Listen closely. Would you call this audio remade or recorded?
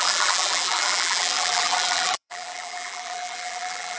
remade